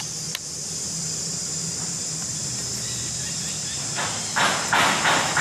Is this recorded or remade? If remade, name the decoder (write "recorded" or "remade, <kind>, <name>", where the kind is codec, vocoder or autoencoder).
remade, vocoder, BigVGAN v2